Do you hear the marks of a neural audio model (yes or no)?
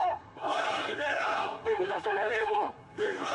yes